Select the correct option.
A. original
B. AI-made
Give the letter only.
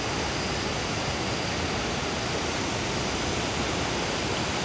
A